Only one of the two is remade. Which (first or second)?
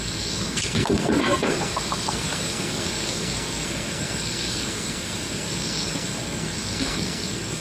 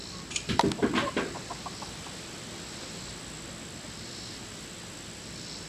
first